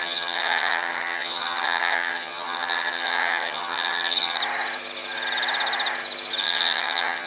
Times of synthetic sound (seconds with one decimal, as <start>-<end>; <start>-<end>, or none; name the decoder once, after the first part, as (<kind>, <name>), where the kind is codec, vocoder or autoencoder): 0.0-4.4 (vocoder, HiFi-GAN); 6.4-7.3